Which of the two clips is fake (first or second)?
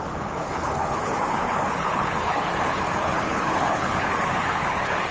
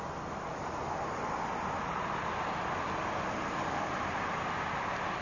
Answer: first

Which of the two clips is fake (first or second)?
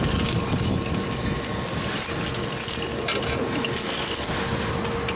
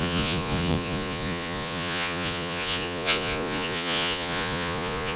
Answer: second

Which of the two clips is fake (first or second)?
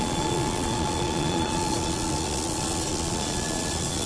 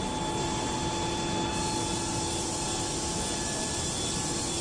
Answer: first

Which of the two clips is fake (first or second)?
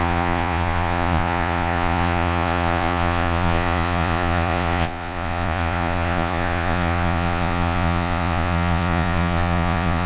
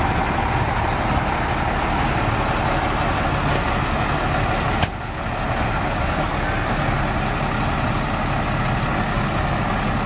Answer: first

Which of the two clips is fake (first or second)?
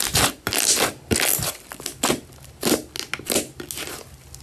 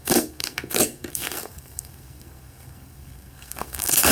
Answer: second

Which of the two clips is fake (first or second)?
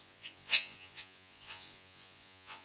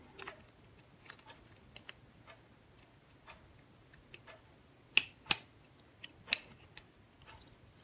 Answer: first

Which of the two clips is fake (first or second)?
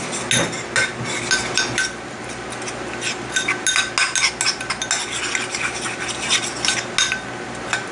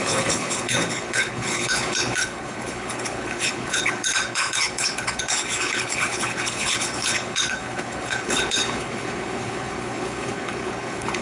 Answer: second